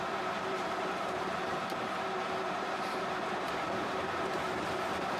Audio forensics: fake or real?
fake